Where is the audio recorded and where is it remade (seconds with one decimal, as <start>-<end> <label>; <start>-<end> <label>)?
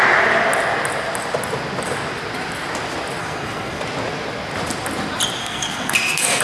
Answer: 0.0-3.2 recorded; 3.2-3.8 remade; 3.8-5.4 recorded; 5.4-6.4 remade